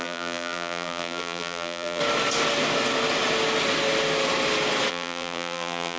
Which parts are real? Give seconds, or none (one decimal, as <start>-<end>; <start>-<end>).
2.0-4.9